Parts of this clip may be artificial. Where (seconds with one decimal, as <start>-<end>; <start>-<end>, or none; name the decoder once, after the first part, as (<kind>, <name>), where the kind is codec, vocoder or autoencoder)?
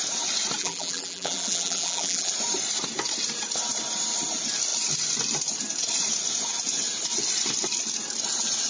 0.6-2.3 (vocoder, BigVGAN v2)